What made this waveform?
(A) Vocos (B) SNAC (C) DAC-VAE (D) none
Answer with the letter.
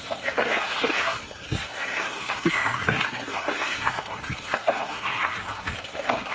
B